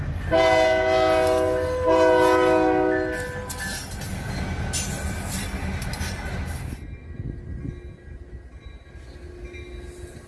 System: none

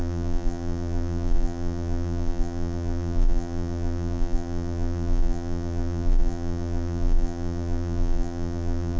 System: vocoder, BigVGAN v2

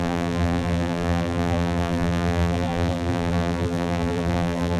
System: vocoder, BigVGAN v2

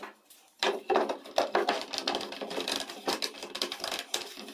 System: vocoder, BigVGAN v2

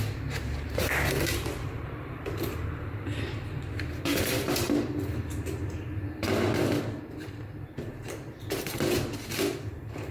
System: vocoder, BigVGAN v2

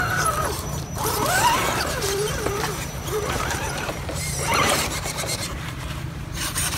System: vocoder, BigVGAN v2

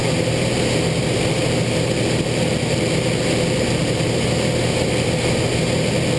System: none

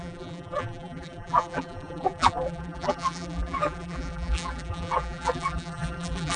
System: vocoder, BigVGAN v2